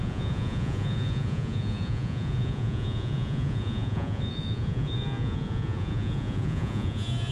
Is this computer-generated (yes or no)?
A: yes